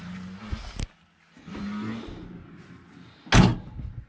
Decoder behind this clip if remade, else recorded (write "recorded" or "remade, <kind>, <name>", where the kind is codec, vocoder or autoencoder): recorded